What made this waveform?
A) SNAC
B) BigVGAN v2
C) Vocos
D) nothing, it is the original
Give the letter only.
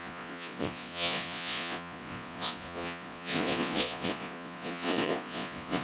C